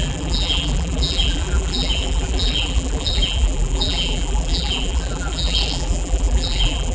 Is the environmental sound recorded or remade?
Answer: remade